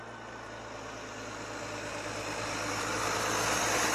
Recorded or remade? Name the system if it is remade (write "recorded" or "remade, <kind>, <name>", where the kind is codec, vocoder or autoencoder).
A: recorded